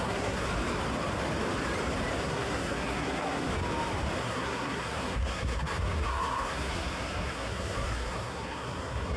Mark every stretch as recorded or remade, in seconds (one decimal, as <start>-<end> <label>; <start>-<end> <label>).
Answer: 0.0-0.5 remade; 0.5-2.2 recorded; 2.2-3.5 remade; 3.5-4.2 recorded; 4.2-9.2 remade